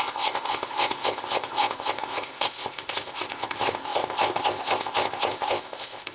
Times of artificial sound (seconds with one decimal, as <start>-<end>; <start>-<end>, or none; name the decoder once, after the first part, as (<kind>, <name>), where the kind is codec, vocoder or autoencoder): 0.0-6.1 (codec, ZipCodec)